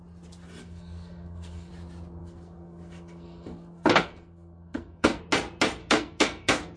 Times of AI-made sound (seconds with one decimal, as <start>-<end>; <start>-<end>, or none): 0.6-1.7; 2.2-5.2; 5.8-6.8